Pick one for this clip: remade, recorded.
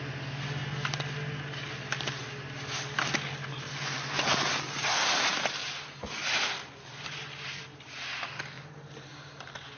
recorded